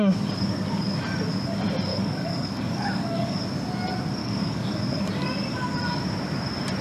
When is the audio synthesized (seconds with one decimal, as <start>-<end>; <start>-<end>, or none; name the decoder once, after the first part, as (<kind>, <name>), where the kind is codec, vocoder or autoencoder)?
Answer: 1.9-3.4 (codec, DAC); 4.2-5.0